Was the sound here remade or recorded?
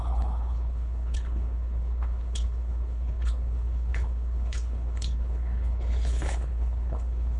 remade